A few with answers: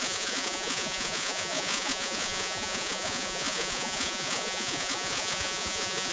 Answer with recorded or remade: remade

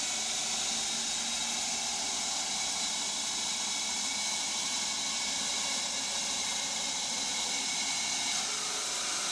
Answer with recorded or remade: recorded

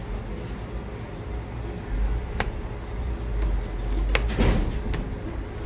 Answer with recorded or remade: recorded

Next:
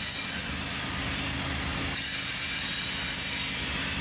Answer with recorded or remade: recorded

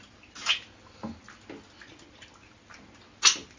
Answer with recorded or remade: recorded